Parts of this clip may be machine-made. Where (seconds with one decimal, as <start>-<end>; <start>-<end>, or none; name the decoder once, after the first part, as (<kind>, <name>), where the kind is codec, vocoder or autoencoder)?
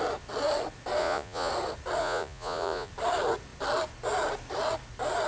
1.0-1.5 (vocoder, Vocos); 2.0-2.9